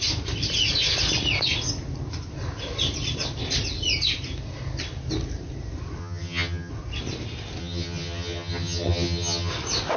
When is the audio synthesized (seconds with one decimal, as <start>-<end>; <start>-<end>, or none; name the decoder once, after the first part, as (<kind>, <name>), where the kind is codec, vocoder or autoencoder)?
6.0-6.7 (vocoder, HiFi-GAN); 7.6-9.5